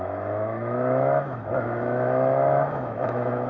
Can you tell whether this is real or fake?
fake